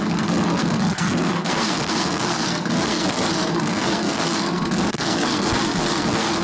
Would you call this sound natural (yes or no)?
no